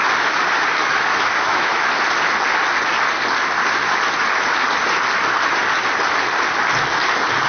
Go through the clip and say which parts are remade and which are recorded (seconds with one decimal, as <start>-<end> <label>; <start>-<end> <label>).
0.0-0.8 recorded; 0.8-1.9 remade; 1.9-7.5 recorded